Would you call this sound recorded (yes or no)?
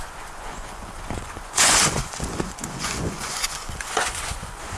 no